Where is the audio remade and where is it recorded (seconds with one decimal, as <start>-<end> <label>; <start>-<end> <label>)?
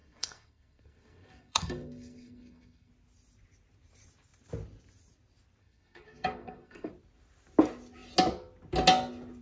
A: 0.0-2.9 remade; 2.9-5.6 recorded; 5.6-6.9 remade; 6.9-9.4 recorded